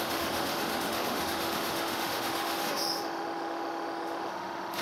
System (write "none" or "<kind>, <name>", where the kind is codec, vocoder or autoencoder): autoencoder, DAC-VAE